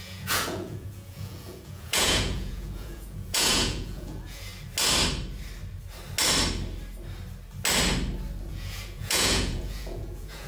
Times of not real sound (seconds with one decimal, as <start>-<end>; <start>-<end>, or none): 0.0-4.5; 8.5-10.5